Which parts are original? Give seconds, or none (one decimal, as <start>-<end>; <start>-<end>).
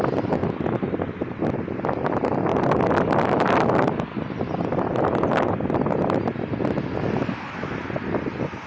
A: 0.0-0.4; 1.2-2.5; 6.0-8.7